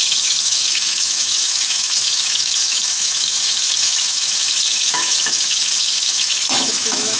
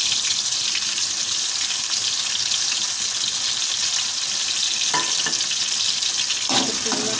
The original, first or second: second